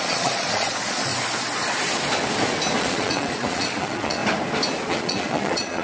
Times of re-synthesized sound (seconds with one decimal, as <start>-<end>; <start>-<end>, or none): 0.0-1.1; 2.8-4.2; 4.9-5.8